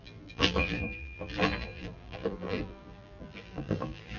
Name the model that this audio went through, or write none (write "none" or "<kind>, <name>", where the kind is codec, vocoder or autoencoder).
vocoder, BigVGAN v2